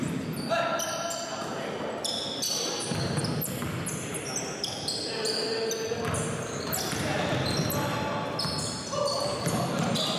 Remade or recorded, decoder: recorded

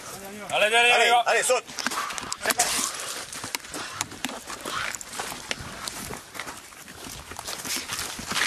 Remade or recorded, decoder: recorded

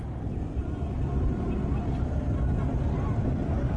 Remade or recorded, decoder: recorded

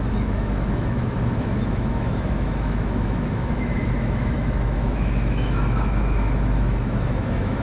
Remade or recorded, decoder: remade, autoencoder, DAC-VAE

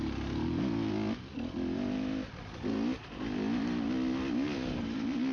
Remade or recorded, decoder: recorded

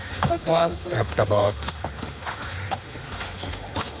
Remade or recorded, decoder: remade, autoencoder, DAC-VAE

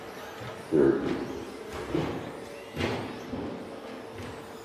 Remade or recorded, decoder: recorded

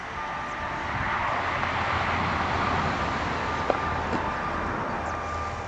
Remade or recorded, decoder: recorded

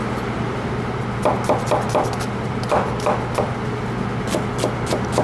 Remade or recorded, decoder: recorded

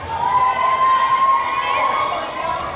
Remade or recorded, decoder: recorded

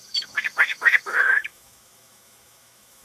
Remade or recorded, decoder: remade, autoencoder, DAC-VAE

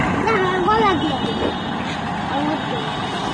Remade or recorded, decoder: recorded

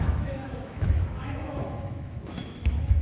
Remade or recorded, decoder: remade, autoencoder, DAC-VAE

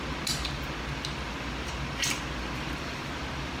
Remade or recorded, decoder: recorded